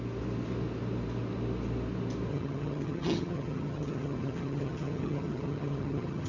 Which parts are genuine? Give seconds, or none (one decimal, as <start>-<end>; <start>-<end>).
0.0-2.3